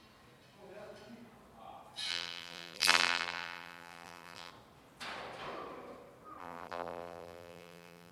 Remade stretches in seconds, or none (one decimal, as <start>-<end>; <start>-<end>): 2.1-4.5; 6.4-8.1